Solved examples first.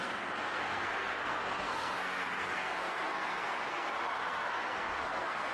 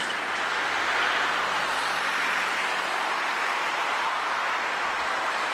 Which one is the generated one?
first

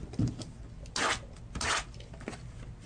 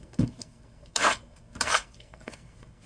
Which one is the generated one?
second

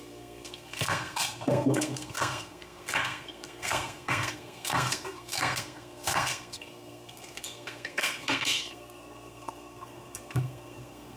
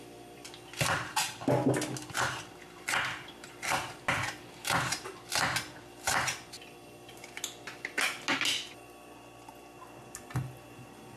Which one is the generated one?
first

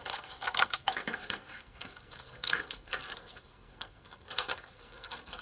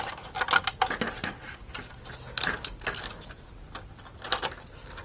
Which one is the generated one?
first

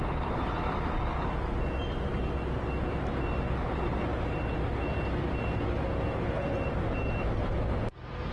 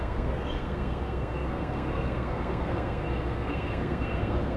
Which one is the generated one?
second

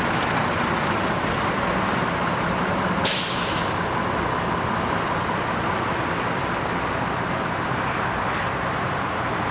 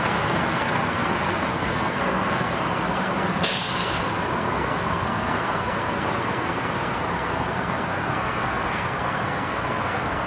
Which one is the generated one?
second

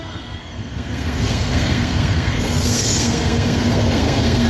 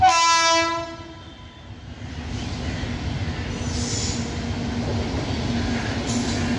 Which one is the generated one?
first